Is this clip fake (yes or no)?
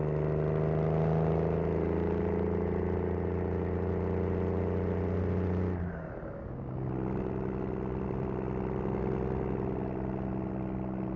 no